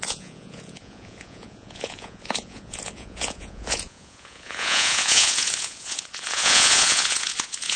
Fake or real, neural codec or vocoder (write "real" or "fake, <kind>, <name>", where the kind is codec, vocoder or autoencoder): fake, vocoder, Vocos